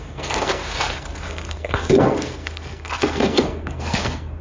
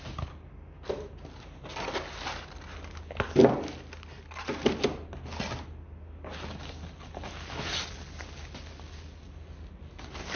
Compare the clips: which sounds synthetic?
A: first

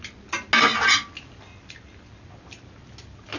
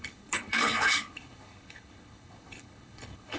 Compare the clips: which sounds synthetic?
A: second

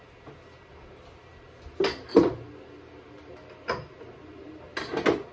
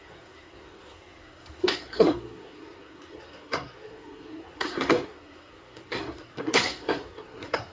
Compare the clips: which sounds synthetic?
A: second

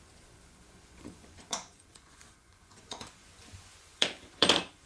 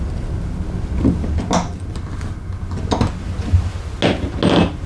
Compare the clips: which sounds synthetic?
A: first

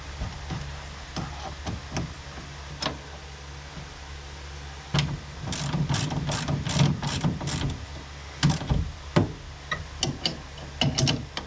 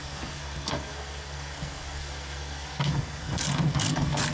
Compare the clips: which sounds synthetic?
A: second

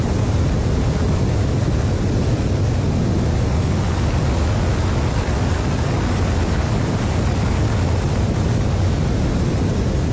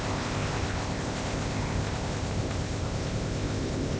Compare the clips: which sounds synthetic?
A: second